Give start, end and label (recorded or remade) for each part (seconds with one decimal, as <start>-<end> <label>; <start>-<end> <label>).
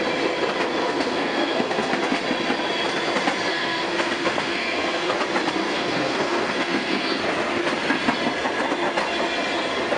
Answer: 0.0-0.8 recorded; 0.8-1.9 remade; 1.9-3.5 recorded; 3.5-5.1 remade; 5.1-5.6 recorded; 5.6-7.2 remade; 7.2-10.0 recorded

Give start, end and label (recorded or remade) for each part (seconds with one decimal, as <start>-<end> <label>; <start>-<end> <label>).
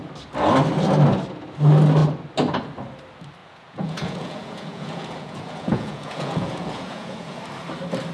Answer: 0.0-3.4 recorded; 3.4-7.4 remade; 7.4-8.1 recorded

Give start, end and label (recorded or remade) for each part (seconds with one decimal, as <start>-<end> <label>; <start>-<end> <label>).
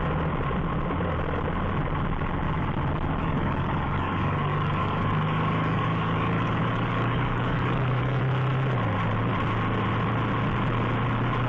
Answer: 0.0-3.2 recorded; 3.2-8.2 remade; 8.2-11.5 recorded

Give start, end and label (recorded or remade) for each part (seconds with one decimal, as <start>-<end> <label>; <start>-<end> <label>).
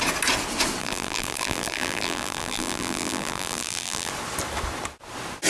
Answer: 0.0-0.8 recorded; 0.8-4.1 remade; 4.1-5.5 recorded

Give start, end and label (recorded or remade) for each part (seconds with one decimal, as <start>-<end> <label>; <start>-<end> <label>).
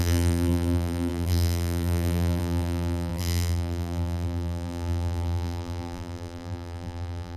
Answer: 0.0-7.4 remade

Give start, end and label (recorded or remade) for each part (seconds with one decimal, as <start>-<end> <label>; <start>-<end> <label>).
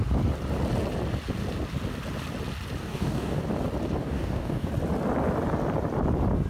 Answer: 0.0-2.8 recorded; 2.8-3.4 remade; 3.4-4.0 recorded; 4.0-4.7 remade; 4.7-6.5 recorded